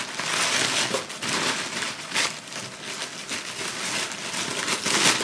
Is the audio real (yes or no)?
yes